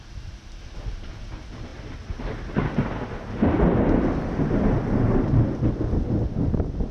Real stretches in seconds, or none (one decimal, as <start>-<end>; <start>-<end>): 0.0-6.9